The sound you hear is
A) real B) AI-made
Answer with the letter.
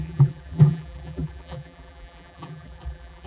B